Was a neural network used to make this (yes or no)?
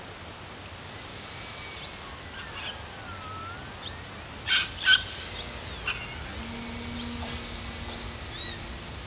no